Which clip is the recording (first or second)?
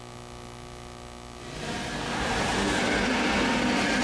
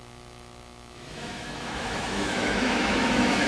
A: first